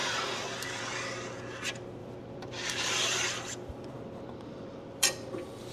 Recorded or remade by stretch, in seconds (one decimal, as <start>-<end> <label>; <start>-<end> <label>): 0.0-0.8 remade; 0.8-2.0 recorded; 2.0-5.7 remade